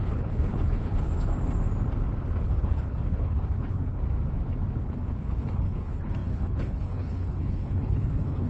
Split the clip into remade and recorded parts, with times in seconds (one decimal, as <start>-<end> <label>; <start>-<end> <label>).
0.0-1.3 remade; 1.3-2.4 recorded; 2.4-4.0 remade; 4.0-4.8 recorded; 4.8-8.5 remade